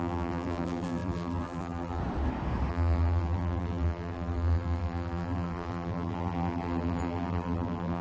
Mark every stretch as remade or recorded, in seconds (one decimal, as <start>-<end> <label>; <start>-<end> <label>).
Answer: 0.0-2.0 remade; 2.0-2.7 recorded; 2.7-8.0 remade